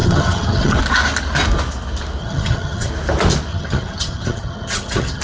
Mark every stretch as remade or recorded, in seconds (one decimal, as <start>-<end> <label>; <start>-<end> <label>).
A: 0.0-0.8 remade; 0.8-2.2 recorded; 2.2-2.9 remade; 2.9-3.5 recorded; 3.5-5.2 remade